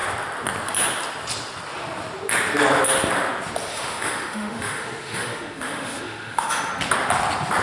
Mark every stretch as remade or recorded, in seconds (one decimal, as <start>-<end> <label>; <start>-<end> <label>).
0.0-3.7 recorded; 3.7-6.7 remade; 6.7-7.6 recorded